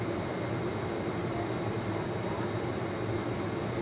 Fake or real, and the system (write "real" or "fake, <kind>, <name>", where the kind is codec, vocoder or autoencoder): real